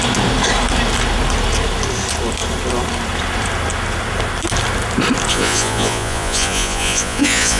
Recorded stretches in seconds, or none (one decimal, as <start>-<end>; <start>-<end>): 0.0-5.3

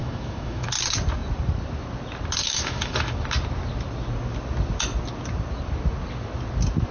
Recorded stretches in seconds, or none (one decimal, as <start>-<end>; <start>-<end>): 0.7-2.4; 3.2-6.9

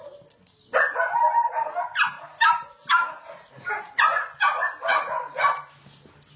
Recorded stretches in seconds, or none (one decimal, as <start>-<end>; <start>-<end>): 0.0-6.4